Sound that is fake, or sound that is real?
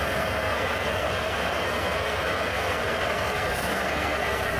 fake